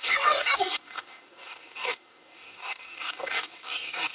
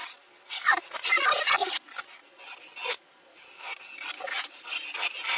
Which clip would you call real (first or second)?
second